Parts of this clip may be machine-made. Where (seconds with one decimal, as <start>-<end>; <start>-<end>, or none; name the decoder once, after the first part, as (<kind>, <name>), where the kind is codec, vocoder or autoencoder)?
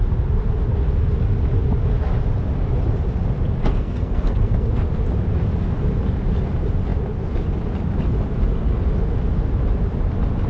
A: 3.6-4.9 (codec, SNAC)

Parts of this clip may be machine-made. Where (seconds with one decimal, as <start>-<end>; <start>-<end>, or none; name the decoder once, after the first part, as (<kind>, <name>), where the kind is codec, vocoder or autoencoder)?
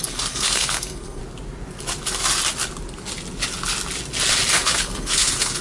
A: 0.0-1.2 (codec, SNAC); 4.6-5.6